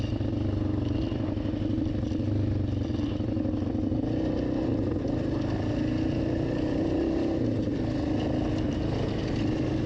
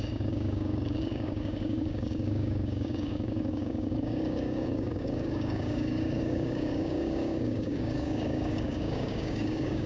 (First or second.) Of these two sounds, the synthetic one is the second